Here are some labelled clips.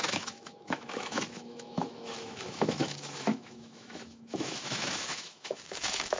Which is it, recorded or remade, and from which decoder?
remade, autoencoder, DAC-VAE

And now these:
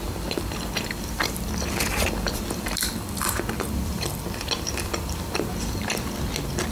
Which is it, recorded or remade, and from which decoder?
remade, vocoder, BigVGAN v2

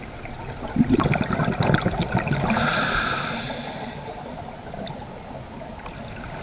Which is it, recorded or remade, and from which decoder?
recorded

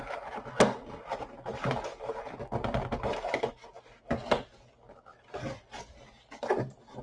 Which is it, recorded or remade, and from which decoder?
recorded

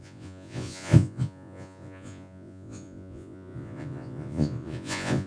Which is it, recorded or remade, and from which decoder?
remade, vocoder, Vocos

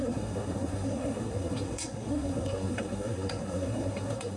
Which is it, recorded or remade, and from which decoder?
remade, codec, SNAC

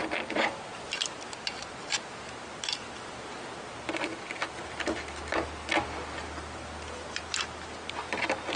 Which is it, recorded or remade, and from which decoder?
recorded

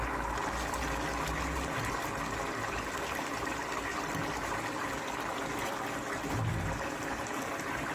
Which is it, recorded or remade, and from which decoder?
recorded